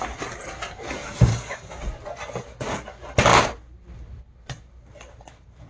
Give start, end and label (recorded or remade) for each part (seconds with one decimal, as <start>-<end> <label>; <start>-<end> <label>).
0.0-1.3 recorded; 1.3-1.8 remade; 1.8-5.7 recorded